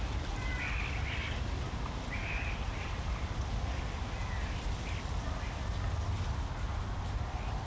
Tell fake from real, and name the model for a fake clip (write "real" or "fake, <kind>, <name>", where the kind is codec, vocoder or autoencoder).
real